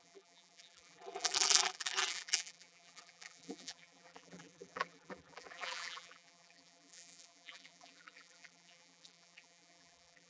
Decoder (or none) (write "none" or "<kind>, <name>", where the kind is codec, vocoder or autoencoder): vocoder, BigVGAN v2